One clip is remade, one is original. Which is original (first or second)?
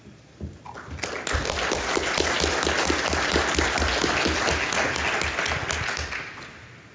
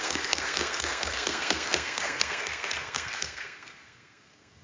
first